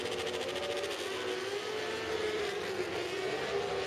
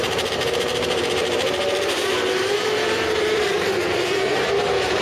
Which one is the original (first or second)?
first